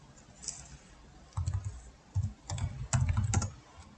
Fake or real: real